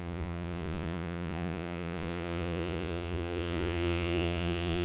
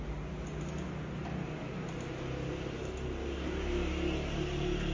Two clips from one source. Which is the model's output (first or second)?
first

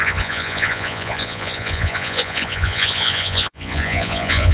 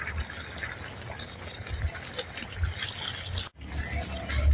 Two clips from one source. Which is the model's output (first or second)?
first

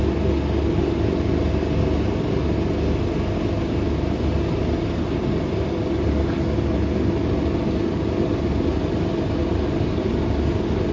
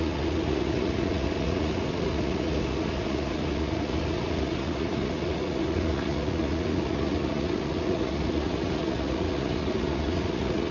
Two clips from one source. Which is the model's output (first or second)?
second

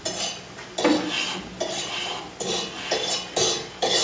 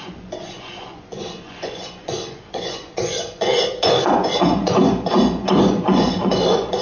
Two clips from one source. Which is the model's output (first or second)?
second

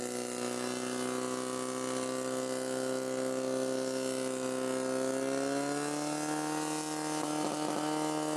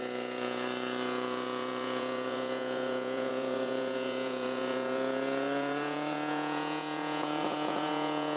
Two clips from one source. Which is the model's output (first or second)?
second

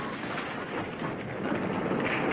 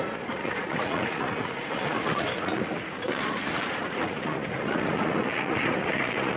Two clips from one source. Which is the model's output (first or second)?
second